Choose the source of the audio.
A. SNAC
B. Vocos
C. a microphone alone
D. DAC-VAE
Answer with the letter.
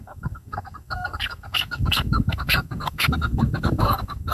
A